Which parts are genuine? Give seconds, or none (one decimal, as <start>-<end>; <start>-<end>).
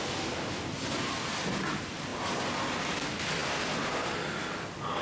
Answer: 0.0-5.0